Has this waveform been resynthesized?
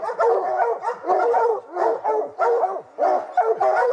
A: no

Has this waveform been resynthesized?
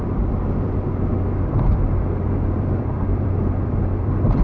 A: yes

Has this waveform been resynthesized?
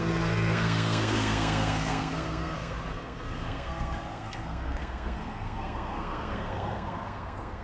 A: yes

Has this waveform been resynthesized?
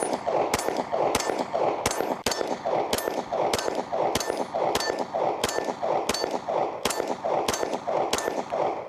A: no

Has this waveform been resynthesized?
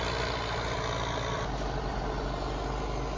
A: no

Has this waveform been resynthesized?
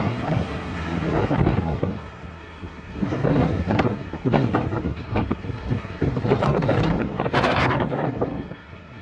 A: yes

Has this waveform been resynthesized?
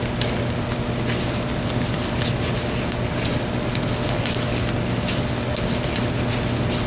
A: no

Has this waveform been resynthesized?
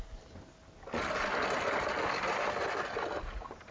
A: no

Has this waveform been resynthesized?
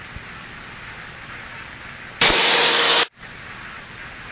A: no